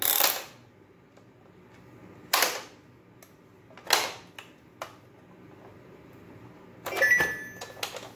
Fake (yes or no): no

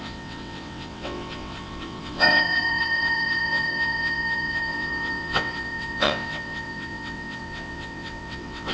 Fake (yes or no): yes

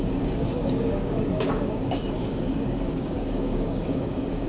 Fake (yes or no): yes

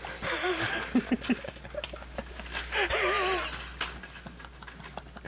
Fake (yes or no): no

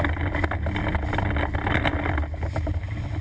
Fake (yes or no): no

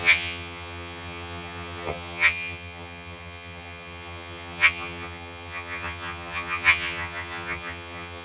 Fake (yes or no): yes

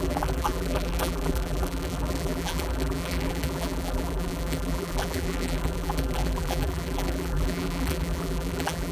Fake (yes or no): yes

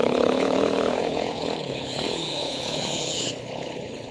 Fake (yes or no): yes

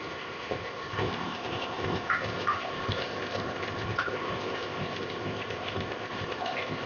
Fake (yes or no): yes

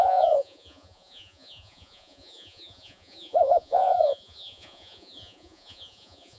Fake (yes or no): yes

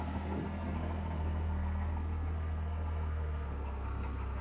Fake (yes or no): yes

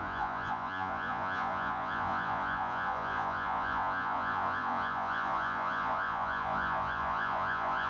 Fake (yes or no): yes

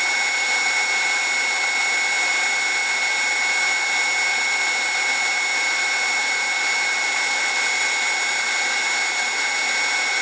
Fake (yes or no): no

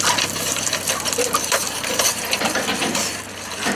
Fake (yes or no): no